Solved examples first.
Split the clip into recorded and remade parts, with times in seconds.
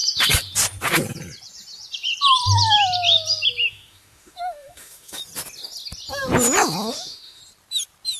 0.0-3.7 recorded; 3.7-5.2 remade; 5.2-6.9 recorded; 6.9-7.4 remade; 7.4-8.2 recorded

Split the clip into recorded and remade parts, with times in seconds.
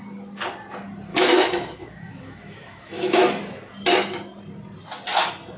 0.0-1.1 recorded; 1.1-3.4 remade; 3.4-5.6 recorded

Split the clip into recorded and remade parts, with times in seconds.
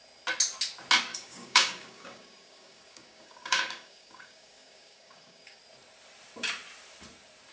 0.0-1.1 recorded; 1.1-5.6 remade; 5.6-7.5 recorded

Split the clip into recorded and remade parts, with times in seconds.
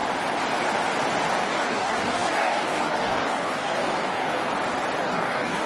0.0-1.4 recorded; 1.4-4.5 remade; 4.5-5.0 recorded; 5.0-5.7 remade